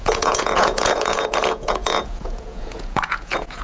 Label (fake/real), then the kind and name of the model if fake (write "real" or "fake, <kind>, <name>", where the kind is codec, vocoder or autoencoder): fake, vocoder, Vocos